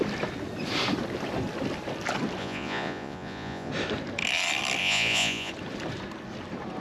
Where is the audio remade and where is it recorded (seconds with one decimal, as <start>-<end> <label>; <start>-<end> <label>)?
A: 0.0-2.4 recorded; 2.4-3.7 remade; 3.7-4.8 recorded; 4.8-5.5 remade; 5.5-6.8 recorded

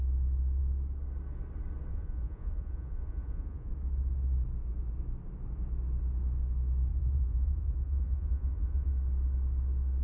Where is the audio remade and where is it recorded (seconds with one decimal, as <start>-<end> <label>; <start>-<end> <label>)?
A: 0.0-1.9 recorded; 1.9-3.7 remade; 3.7-6.9 recorded; 6.9-8.9 remade; 8.9-10.0 recorded